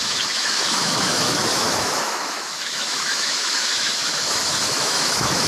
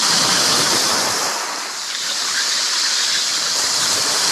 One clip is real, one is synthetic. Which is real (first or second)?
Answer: second